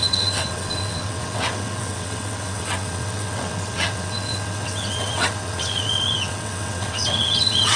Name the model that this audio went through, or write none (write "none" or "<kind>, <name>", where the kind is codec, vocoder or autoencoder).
vocoder, WaveNeXt